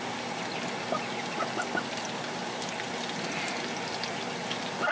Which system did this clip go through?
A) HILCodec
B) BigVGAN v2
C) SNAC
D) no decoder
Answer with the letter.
D